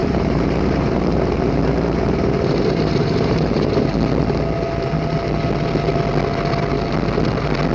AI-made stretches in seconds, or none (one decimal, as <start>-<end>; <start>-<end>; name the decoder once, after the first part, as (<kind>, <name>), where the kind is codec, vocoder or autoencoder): 0.0-3.9 (vocoder, BigVGAN v2)